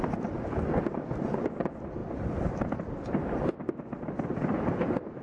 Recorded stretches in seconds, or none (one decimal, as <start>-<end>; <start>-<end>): 0.0-5.2